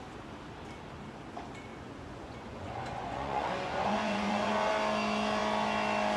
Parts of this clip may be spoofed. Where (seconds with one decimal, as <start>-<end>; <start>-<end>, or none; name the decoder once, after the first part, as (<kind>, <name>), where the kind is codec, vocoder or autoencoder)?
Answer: 1.7-4.7 (vocoder, Vocos)